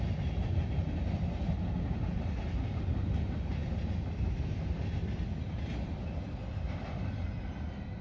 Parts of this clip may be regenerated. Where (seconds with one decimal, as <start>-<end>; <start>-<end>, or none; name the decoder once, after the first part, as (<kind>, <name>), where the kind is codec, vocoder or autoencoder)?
none